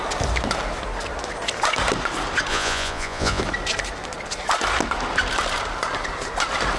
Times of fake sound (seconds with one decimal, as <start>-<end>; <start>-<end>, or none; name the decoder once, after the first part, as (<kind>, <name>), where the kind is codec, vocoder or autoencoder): 2.5-3.4 (vocoder, Vocos)